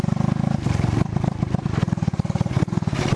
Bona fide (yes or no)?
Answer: yes